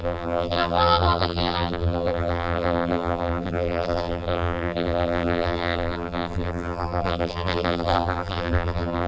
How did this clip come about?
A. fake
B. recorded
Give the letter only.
A